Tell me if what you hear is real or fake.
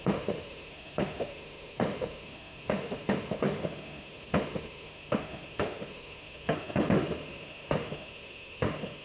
fake